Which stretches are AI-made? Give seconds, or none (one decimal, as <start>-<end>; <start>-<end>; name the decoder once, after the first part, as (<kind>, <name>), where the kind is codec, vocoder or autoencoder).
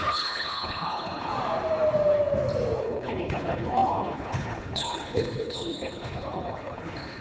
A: 0.0-1.3 (codec, HILCodec); 2.8-7.2